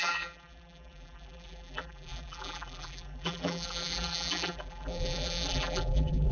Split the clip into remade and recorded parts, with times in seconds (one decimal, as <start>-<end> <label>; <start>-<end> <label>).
0.0-6.3 remade